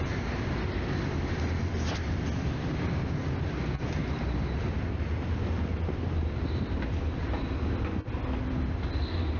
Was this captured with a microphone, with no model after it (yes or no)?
yes